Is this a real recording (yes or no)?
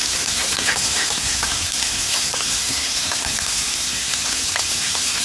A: no